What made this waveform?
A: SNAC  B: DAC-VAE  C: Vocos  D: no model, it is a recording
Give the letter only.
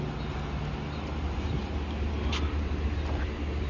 D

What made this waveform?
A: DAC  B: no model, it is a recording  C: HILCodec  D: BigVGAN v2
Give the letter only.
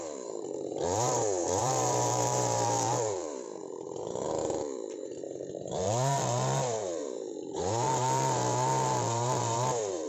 D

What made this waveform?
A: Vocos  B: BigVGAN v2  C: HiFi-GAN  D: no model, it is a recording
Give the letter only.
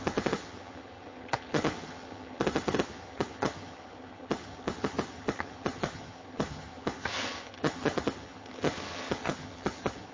C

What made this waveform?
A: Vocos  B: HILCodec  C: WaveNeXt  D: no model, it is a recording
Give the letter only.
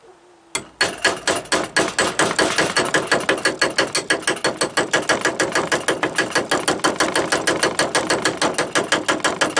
D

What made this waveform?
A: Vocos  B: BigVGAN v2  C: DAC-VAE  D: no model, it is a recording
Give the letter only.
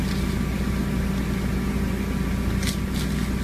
D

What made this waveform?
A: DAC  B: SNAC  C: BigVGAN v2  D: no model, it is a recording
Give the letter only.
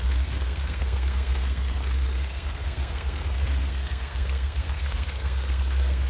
B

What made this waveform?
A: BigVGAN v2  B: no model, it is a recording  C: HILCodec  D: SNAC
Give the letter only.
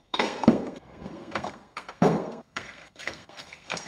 D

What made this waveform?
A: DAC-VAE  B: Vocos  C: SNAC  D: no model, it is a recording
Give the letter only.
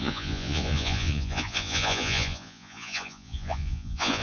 B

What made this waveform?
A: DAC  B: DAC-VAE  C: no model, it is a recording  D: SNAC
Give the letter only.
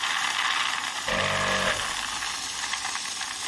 C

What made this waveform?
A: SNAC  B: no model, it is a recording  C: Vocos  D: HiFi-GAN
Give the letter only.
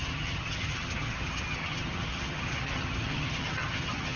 D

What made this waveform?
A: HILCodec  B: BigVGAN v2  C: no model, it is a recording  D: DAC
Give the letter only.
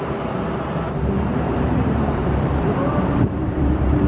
B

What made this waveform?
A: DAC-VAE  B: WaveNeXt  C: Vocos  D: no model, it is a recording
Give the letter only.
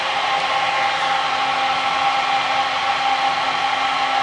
D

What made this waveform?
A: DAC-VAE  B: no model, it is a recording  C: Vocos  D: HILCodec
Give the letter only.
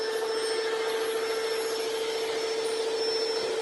B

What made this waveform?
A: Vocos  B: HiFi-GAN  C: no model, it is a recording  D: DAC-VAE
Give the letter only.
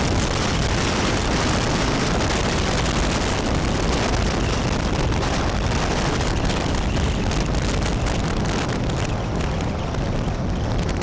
C